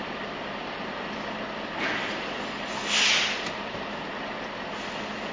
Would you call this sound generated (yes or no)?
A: no